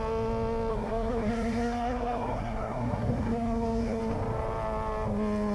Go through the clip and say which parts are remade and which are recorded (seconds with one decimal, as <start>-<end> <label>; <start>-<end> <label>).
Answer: 0.0-0.7 recorded; 0.7-4.0 remade; 4.0-5.5 recorded